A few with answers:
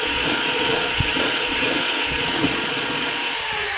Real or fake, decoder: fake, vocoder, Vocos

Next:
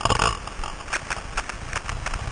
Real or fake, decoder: real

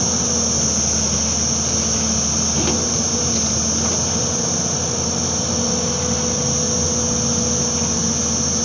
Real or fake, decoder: real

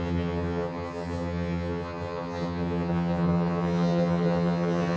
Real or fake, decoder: fake, vocoder, HiFi-GAN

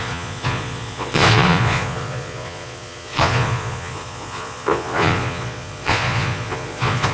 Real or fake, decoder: fake, vocoder, Vocos